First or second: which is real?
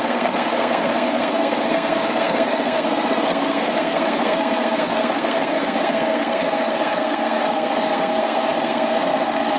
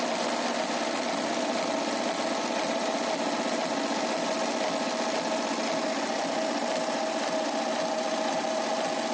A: second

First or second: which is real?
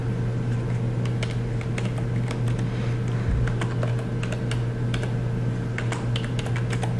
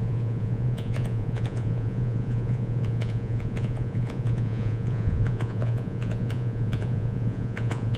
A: first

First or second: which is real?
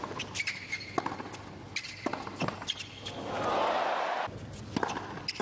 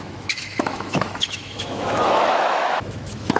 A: first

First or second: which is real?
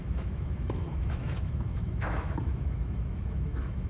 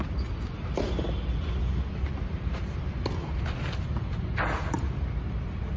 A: second